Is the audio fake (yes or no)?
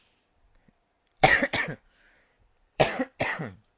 yes